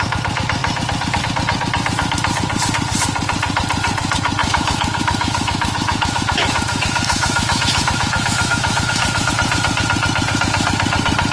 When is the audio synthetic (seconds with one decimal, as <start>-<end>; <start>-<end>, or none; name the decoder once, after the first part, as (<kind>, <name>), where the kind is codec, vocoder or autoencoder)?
4.4-9.3 (autoencoder, DAC-VAE)